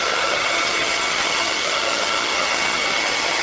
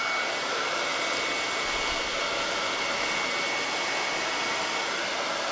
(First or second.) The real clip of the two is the second